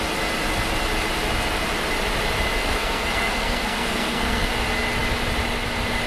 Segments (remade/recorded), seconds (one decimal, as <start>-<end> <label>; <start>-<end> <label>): 0.0-2.6 recorded; 2.6-4.5 remade; 4.5-6.1 recorded